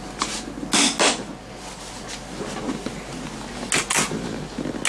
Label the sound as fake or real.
real